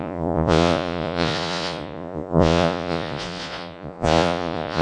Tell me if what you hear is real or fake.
fake